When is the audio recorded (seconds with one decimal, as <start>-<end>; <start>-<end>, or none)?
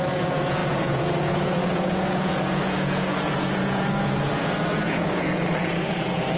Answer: none